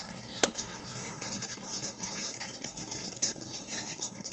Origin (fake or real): fake